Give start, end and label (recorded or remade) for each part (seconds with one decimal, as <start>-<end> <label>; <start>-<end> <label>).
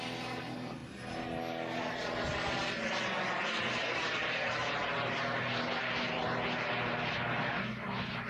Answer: 0.0-8.3 recorded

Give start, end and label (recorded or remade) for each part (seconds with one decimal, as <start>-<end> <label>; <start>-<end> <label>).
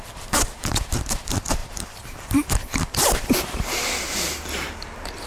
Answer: 0.0-5.3 remade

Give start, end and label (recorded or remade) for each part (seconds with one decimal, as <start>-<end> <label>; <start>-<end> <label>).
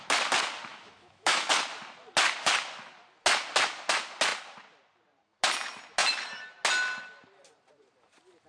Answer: 0.0-0.7 recorded; 0.7-1.5 remade; 1.5-8.5 recorded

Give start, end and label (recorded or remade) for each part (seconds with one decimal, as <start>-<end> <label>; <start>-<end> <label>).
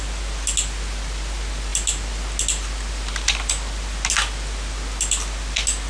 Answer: 0.0-5.9 recorded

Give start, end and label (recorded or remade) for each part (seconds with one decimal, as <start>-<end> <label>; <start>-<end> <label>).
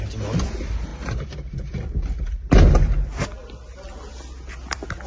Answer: 0.0-5.1 recorded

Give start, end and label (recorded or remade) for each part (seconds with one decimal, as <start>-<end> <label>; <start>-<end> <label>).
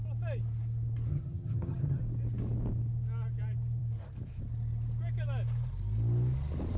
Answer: 0.0-1.1 recorded; 1.1-2.0 remade; 2.0-6.8 recorded